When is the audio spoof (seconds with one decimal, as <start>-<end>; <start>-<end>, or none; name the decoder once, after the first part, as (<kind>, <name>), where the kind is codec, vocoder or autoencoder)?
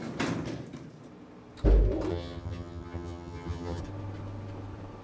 2.1-3.8 (vocoder, HiFi-GAN)